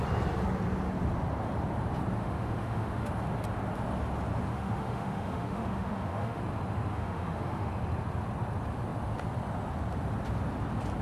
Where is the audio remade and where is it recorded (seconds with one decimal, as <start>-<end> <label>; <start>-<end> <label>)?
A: 0.0-2.2 recorded; 2.2-3.1 remade; 3.1-4.5 recorded; 4.5-6.4 remade; 6.4-6.9 recorded; 6.9-7.7 remade; 7.7-11.0 recorded